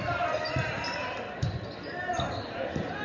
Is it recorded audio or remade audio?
recorded